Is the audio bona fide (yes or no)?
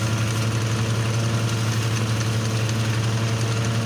yes